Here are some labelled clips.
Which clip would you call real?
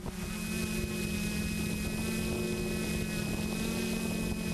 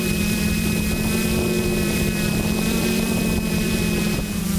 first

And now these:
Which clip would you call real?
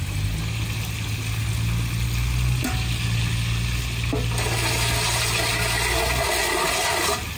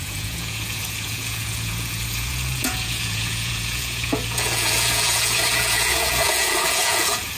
first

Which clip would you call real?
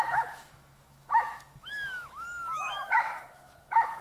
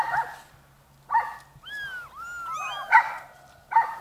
second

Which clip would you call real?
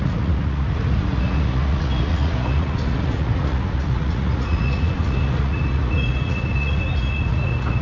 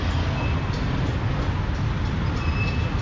second